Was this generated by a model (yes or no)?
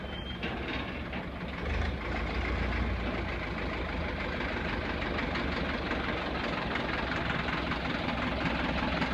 no